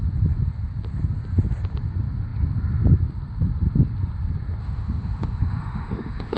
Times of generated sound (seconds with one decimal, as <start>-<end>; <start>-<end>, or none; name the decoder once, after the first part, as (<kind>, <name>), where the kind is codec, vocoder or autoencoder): 4.6-6.4 (autoencoder, DAC-VAE)

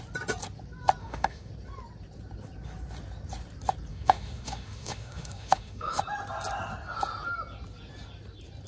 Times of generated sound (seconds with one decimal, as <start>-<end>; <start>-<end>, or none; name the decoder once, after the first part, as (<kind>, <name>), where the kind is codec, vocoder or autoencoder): 1.0-1.5 (autoencoder, DAC-VAE); 3.9-6.0